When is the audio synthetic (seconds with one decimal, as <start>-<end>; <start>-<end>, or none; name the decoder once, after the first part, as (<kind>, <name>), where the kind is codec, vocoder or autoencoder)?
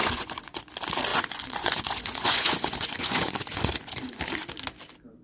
0.0-0.6 (vocoder, Vocos); 1.1-4.2